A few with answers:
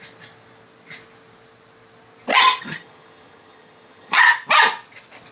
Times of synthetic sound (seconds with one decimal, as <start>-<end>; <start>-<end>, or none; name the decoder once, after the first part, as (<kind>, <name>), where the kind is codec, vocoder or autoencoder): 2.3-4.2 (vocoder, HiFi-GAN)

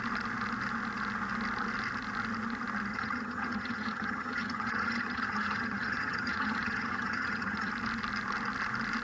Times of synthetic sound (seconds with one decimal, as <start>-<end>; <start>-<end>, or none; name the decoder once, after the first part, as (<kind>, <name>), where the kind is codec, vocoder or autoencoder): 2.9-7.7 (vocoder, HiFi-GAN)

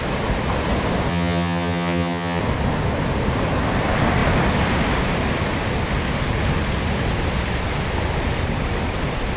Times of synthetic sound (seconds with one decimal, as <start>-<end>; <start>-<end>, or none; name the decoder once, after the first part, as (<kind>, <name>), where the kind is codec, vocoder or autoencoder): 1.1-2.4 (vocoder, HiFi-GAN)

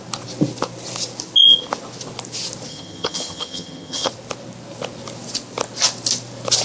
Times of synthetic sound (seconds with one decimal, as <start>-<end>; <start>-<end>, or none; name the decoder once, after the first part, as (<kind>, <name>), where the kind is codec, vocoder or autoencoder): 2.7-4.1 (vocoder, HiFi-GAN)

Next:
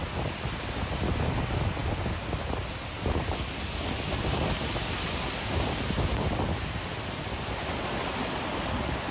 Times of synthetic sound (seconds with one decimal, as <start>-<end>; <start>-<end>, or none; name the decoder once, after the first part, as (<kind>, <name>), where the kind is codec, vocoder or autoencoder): none

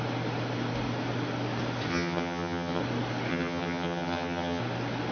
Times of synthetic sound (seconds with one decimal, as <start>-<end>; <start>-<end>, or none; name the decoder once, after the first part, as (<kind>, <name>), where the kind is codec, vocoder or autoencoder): 1.9-2.8 (vocoder, HiFi-GAN); 3.3-4.6

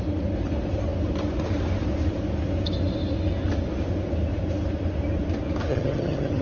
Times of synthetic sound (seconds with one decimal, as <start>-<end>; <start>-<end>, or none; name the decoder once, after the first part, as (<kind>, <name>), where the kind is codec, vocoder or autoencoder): 5.7-6.4 (vocoder, HiFi-GAN)

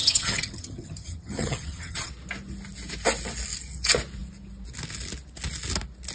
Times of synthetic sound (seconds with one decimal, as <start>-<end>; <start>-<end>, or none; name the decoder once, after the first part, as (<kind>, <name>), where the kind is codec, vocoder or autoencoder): 0.0-2.1 (vocoder, HiFi-GAN)